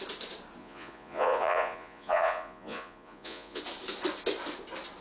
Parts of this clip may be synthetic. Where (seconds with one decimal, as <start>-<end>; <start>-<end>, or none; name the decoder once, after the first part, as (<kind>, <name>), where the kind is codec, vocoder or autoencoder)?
0.6-3.6 (vocoder, Vocos)